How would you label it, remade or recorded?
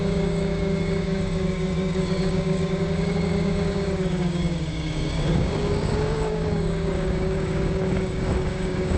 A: remade